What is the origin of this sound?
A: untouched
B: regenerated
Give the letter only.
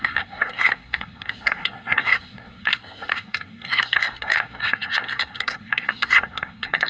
B